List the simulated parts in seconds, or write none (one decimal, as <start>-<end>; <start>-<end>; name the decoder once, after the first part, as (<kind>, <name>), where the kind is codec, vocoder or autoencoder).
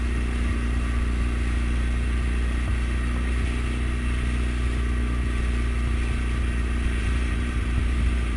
7.0-8.4 (vocoder, BigVGAN v2)